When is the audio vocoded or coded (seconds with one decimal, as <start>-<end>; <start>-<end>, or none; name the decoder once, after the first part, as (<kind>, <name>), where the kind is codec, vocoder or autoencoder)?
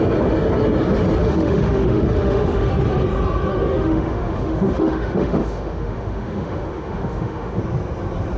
1.2-2.7 (autoencoder, DAC-VAE); 3.5-7.6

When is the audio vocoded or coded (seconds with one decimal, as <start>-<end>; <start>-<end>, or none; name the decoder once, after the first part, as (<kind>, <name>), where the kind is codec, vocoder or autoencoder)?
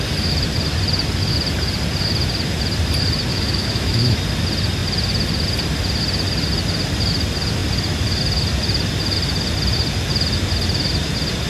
3.3-4.2 (autoencoder, DAC-VAE)